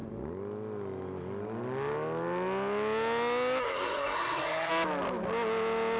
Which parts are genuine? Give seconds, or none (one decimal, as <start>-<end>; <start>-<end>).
0.0-3.6; 4.7-6.0